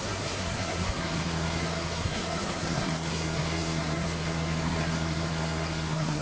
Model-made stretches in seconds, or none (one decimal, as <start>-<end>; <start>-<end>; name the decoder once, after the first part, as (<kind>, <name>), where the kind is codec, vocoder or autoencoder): 0.0-6.2 (codec, SNAC)